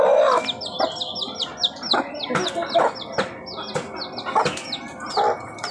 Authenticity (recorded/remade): recorded